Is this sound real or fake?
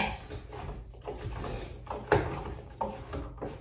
real